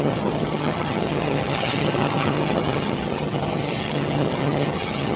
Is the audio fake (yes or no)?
yes